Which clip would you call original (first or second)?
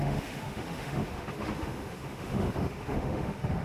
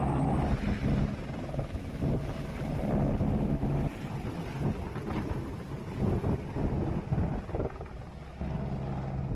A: second